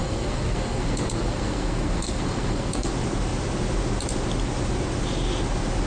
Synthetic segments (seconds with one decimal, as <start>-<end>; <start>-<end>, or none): 0.0-2.9